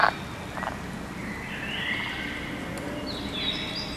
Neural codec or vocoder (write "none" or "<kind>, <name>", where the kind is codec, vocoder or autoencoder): none